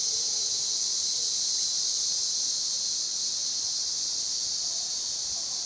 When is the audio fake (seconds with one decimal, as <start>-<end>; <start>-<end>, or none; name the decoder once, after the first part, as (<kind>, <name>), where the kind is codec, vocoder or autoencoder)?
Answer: none